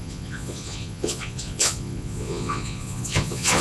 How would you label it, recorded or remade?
remade